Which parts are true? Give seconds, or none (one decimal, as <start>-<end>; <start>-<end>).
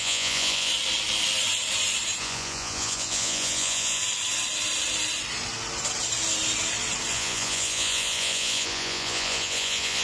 0.7-2.2; 4.0-7.1